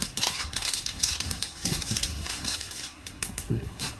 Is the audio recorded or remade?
remade